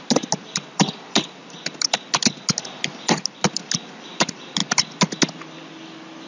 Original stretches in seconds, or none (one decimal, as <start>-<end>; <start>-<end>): 0.0-6.3